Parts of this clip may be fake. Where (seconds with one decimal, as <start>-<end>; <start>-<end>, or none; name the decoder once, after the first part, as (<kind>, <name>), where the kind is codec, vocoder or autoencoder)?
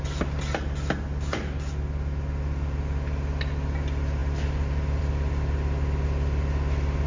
none